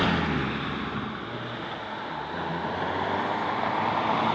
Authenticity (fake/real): real